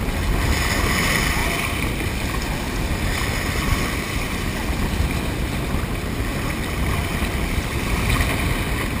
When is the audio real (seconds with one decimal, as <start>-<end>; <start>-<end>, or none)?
0.0-9.0